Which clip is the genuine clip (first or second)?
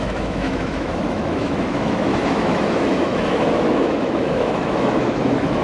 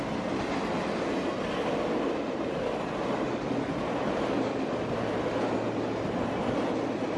second